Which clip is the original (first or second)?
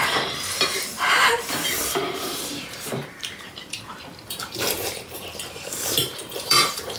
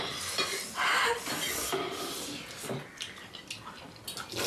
second